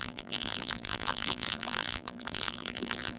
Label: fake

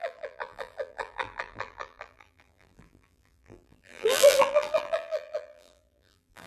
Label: fake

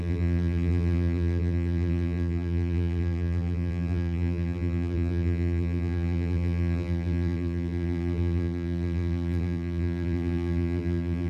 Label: fake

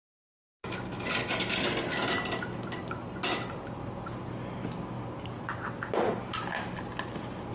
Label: real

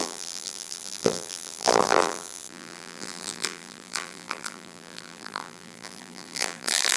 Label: fake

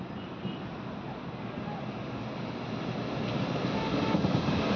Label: real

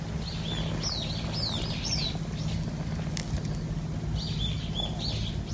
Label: real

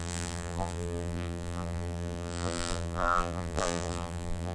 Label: fake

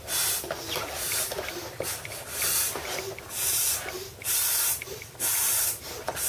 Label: fake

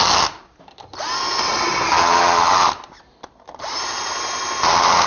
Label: real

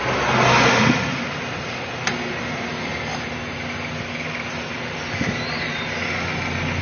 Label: real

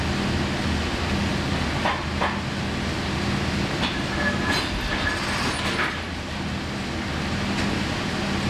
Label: real